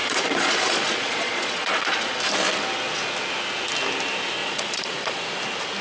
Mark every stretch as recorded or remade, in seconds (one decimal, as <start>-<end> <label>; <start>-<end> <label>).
0.0-2.2 remade; 2.2-4.4 recorded; 4.4-5.2 remade; 5.2-5.8 recorded